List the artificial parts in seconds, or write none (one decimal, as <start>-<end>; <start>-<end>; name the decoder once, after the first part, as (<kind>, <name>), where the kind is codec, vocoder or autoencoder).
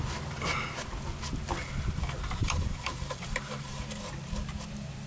2.4-4.0 (vocoder, BigVGAN v2)